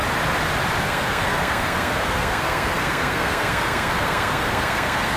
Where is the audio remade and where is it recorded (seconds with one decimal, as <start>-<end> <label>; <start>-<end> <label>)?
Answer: 0.0-0.8 recorded; 0.8-5.2 remade